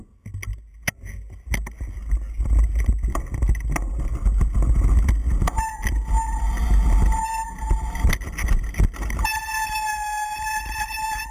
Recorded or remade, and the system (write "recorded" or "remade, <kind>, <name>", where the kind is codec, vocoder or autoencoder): recorded